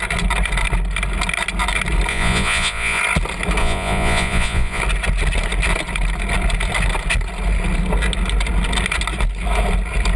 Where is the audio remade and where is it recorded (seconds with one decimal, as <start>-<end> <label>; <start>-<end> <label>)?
0.0-2.1 recorded; 2.1-3.0 remade; 3.0-3.6 recorded; 3.6-4.8 remade; 4.8-10.2 recorded